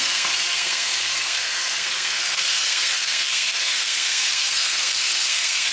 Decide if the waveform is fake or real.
fake